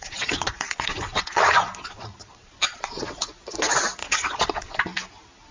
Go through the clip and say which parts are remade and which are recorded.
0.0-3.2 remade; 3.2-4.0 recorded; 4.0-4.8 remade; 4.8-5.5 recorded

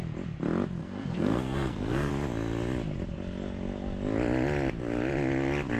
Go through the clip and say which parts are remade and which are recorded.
0.0-0.8 recorded; 0.8-2.1 remade; 2.1-5.8 recorded

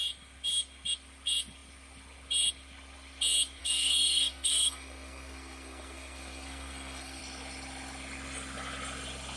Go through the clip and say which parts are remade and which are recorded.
0.0-3.6 recorded; 3.6-7.2 remade; 7.2-9.4 recorded

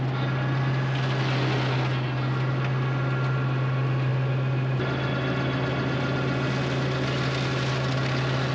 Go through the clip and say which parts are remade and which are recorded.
0.0-8.5 recorded